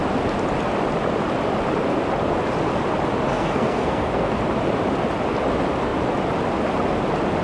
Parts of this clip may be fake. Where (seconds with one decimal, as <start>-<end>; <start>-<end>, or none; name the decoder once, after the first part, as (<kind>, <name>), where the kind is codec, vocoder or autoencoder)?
3.3-4.4 (codec, SNAC)